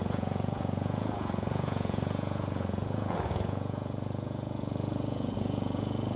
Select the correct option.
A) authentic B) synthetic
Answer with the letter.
B